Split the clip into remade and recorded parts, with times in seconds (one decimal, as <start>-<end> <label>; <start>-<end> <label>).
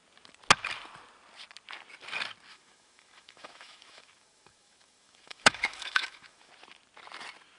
0.0-2.5 recorded; 2.5-6.5 remade; 6.5-7.6 recorded